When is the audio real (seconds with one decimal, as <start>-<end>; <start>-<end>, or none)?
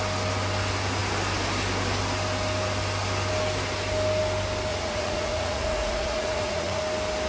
0.0-4.7; 6.8-7.3